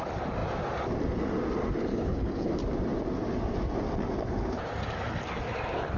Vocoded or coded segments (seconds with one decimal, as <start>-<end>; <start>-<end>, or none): 1.9-2.5